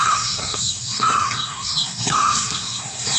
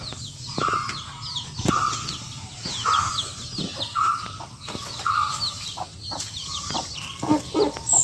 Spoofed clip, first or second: first